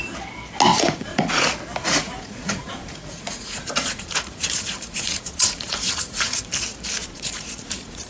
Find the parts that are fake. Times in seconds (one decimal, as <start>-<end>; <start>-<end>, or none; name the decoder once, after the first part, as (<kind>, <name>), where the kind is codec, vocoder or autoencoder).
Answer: 0.7-1.4 (vocoder, Vocos); 1.8-6.5; 7.0-8.1